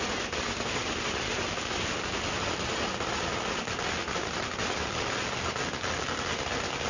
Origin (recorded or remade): recorded